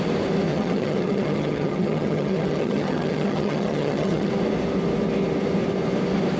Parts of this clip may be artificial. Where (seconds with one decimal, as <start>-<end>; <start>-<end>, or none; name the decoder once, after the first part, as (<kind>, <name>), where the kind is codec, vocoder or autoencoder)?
0.5-4.3 (vocoder, HiFi-GAN)